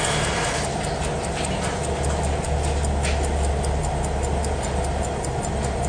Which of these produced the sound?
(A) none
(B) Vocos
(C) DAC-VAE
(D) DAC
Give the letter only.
A